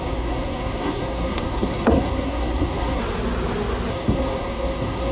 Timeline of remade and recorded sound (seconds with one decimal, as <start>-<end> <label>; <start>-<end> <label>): 0.0-3.0 remade; 3.0-3.9 recorded; 3.9-5.1 remade